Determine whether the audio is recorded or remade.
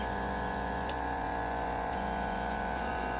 remade